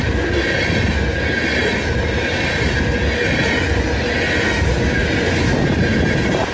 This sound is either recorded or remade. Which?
recorded